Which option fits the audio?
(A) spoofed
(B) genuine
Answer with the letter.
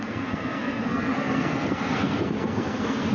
A